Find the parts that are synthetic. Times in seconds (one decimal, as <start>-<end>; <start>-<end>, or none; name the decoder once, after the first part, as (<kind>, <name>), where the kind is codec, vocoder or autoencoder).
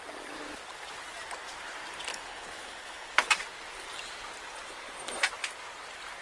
2.1-3.3 (codec, HILCodec)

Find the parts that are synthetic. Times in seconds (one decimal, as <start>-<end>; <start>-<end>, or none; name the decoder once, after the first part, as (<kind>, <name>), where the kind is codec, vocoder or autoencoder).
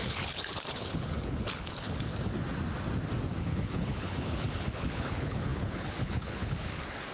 0.0-2.1 (codec, HILCodec); 3.4-7.1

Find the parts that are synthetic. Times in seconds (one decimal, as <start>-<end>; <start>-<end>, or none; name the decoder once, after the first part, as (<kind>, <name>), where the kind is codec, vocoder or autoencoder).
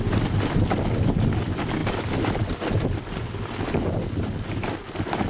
none